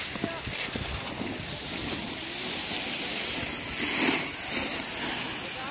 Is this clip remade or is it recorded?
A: recorded